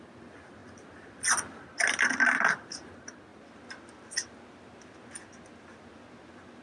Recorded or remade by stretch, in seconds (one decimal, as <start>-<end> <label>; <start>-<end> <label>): 0.0-6.6 recorded